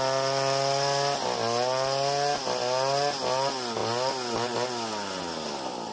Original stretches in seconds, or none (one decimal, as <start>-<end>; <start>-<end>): 0.0-5.9